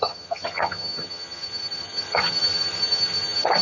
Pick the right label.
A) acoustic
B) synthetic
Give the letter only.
B